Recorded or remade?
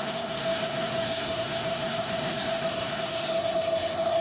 remade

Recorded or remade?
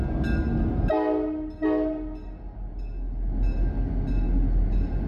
recorded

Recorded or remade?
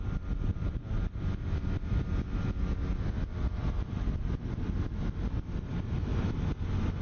recorded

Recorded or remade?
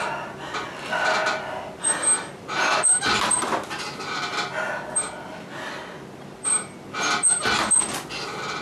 recorded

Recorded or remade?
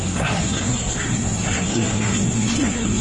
remade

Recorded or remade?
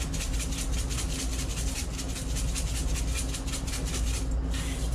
recorded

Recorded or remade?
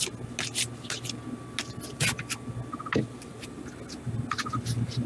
recorded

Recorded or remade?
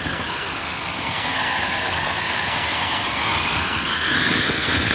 remade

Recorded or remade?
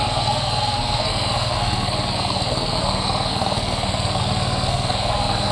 remade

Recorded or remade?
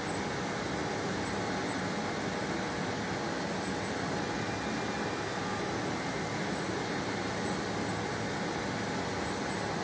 recorded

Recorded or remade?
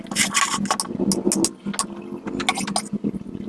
recorded